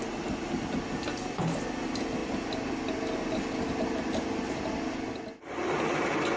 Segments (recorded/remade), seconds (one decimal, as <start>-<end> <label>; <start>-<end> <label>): 0.0-6.4 recorded